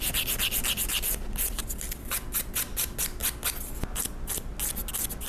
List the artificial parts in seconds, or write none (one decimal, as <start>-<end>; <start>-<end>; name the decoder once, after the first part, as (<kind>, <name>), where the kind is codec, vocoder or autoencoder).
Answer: none

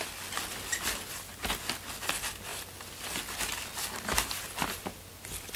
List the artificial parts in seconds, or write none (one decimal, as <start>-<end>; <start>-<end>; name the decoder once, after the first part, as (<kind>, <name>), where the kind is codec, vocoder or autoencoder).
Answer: none

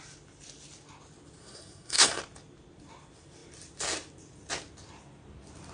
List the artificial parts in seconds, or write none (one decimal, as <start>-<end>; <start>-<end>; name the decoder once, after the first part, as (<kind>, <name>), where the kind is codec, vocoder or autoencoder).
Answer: 1.4-2.2 (codec, SNAC)